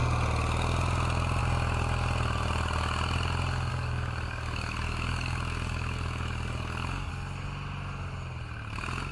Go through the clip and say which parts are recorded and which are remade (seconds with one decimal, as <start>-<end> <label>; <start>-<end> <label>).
0.0-3.7 recorded; 3.7-7.1 remade; 7.1-9.1 recorded